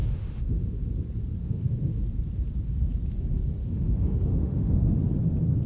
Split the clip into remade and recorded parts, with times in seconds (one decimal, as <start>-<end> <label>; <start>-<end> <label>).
0.0-0.8 remade; 0.8-1.4 recorded; 1.4-2.0 remade; 2.0-3.6 recorded; 3.6-5.0 remade; 5.0-5.7 recorded